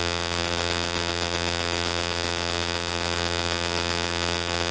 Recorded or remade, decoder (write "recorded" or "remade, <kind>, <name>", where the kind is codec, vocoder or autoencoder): remade, vocoder, BigVGAN v2